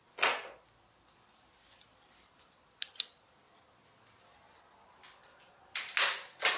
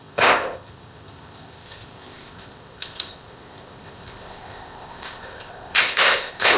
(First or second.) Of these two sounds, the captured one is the first